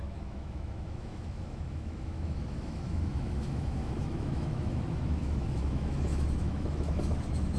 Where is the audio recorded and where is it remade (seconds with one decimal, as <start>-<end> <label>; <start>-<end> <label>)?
0.0-7.6 remade

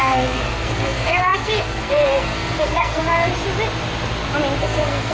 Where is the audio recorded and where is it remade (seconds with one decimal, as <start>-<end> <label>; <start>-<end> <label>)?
0.0-3.3 remade; 3.3-4.6 recorded; 4.6-5.1 remade

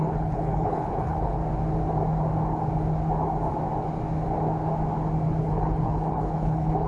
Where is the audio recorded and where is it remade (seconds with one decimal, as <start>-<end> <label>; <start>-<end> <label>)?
0.0-1.4 remade; 1.4-5.4 recorded; 5.4-6.9 remade

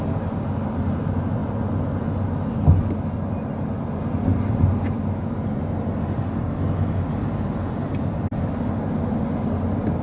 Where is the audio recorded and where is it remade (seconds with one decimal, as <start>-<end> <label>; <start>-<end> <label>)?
0.0-10.0 recorded

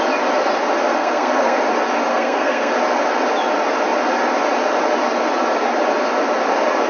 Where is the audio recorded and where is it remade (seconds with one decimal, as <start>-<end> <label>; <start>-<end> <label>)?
0.0-0.9 recorded; 0.9-1.6 remade; 1.6-2.1 recorded; 2.1-2.7 remade; 2.7-6.9 recorded

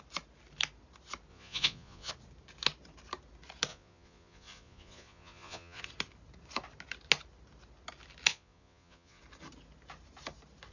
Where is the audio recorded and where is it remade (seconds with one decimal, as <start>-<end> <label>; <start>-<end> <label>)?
0.0-1.3 recorded; 1.3-2.1 remade; 2.1-3.7 recorded; 3.7-5.8 remade; 5.8-8.3 recorded; 8.3-9.2 remade; 9.2-10.7 recorded